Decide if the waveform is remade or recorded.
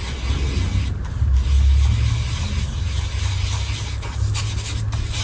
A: recorded